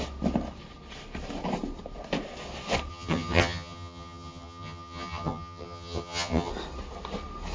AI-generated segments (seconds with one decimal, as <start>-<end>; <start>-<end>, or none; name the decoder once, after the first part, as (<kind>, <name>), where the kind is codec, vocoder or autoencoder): 2.9-6.5 (vocoder, HiFi-GAN)